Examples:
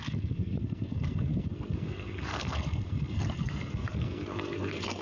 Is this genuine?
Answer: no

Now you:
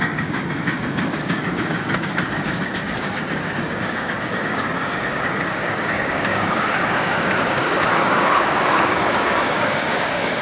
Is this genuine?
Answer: no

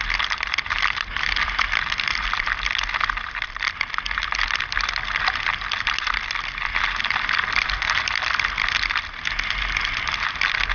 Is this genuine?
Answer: yes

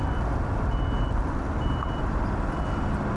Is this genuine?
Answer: yes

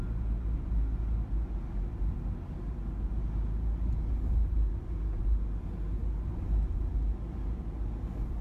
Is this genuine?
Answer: yes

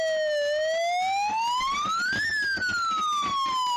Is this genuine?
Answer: yes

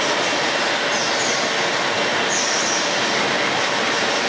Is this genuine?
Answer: yes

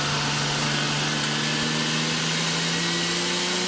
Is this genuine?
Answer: yes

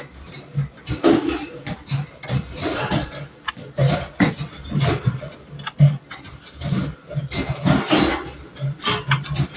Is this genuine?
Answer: yes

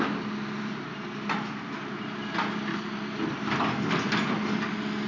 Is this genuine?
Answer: yes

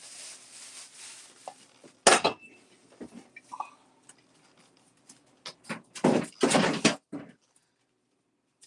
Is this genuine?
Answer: yes